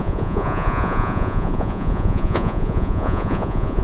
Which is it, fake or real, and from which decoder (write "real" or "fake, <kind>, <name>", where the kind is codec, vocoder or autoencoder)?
fake, vocoder, Vocos